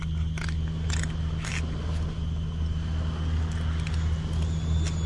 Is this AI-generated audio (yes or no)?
no